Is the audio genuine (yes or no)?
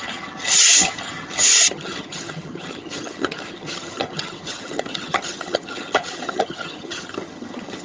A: no